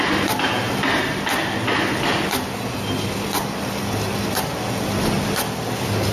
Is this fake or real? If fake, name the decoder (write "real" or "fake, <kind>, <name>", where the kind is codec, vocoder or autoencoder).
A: real